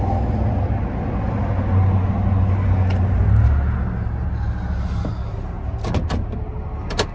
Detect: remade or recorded recorded